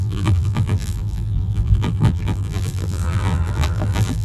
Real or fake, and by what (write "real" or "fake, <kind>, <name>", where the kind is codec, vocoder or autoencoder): fake, vocoder, BigVGAN v2